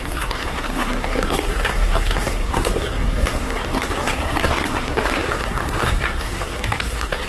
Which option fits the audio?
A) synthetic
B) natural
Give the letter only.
A